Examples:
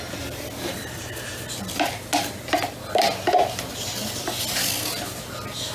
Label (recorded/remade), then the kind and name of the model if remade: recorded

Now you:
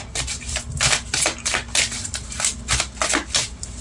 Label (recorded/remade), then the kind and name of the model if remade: recorded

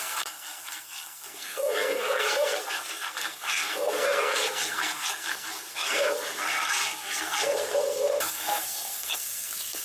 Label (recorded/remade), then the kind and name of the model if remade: remade, codec, SNAC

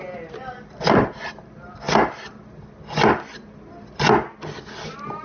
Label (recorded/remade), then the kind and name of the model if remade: recorded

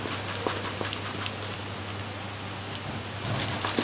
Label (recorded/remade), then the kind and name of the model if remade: recorded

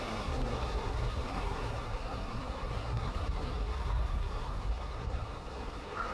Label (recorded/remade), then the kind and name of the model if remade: remade, codec, SNAC